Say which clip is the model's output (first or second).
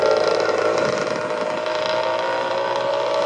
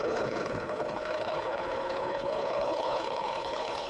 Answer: second